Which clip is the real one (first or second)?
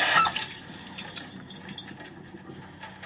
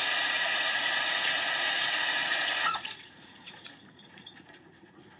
first